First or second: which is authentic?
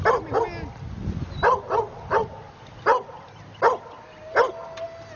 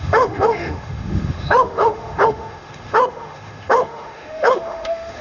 first